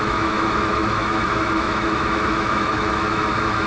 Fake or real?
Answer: fake